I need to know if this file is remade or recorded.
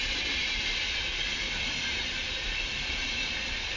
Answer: remade